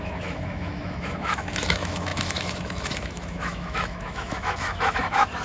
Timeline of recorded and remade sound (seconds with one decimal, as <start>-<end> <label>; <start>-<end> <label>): 0.0-5.4 remade